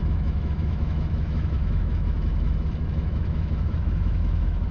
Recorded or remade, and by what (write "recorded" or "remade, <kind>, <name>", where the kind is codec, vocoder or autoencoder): remade, autoencoder, DAC-VAE